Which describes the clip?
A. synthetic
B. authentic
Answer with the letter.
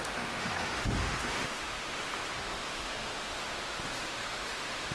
A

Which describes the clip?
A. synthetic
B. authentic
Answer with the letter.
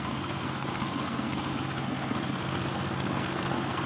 A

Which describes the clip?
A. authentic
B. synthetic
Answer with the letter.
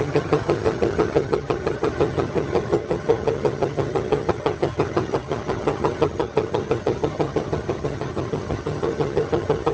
B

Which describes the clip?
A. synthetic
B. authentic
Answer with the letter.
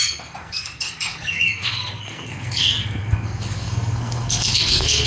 A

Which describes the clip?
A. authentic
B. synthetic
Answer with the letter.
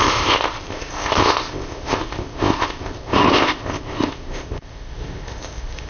B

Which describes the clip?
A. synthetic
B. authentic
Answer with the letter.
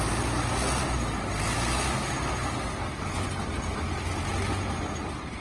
B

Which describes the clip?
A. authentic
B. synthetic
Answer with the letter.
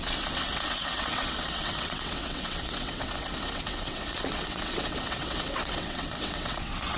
B